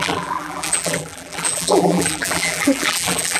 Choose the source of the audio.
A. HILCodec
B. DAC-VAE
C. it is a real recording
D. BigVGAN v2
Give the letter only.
D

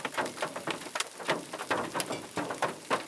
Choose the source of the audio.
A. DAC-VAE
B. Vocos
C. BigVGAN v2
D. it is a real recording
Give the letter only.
D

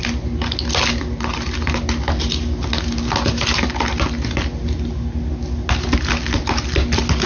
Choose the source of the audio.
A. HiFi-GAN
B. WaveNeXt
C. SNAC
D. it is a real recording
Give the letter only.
D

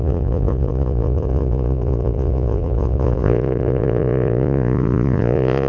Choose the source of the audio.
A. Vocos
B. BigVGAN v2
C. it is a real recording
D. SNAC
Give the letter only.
A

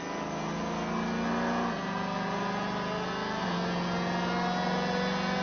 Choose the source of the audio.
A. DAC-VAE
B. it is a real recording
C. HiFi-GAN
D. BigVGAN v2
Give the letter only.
B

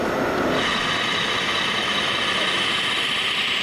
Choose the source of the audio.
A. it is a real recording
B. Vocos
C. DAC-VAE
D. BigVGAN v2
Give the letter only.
A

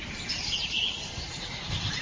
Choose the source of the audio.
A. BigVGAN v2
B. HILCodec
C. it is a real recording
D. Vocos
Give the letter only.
A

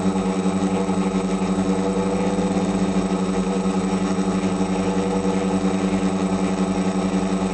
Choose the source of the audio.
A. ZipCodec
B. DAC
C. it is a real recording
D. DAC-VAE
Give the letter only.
C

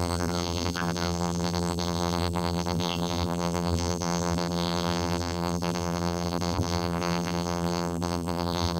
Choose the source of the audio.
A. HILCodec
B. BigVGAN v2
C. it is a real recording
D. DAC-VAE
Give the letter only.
B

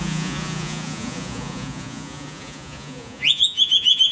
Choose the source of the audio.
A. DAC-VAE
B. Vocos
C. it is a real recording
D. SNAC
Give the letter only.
B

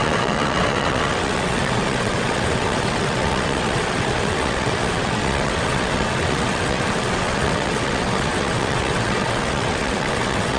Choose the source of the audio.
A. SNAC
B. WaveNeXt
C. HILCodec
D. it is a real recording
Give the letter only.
B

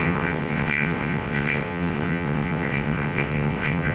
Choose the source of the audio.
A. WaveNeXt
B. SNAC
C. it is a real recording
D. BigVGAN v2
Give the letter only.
A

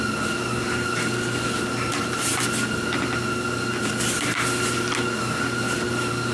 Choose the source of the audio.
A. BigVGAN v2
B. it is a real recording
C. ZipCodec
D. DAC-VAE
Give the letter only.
B